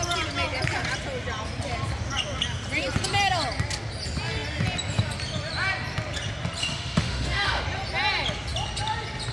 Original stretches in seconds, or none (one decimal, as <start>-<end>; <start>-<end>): 0.0-6.6; 7.6-9.3